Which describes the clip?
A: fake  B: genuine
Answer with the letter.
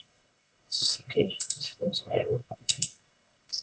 A